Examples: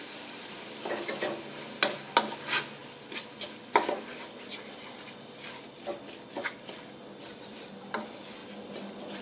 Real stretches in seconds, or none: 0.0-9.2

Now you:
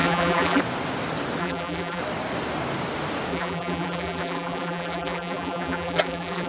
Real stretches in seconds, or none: 0.6-1.4; 2.0-3.3

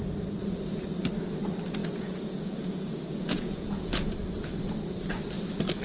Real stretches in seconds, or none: 0.0-1.8; 4.1-5.8

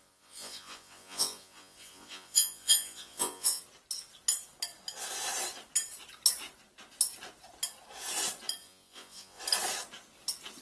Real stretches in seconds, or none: 3.6-8.6; 9.4-10.6

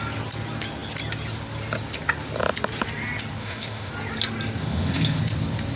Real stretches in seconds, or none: 0.0-3.4; 3.9-4.6; 5.2-5.8

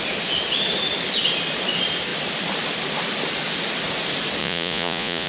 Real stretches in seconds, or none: 0.0-4.4

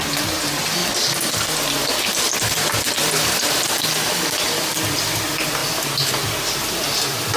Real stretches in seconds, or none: 0.0-7.4